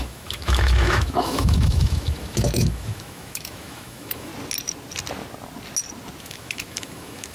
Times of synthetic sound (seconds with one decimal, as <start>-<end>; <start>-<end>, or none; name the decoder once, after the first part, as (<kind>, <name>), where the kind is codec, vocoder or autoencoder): 0.0-4.3 (autoencoder, DAC-VAE); 6.2-7.3